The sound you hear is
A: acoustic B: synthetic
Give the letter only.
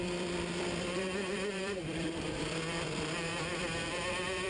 B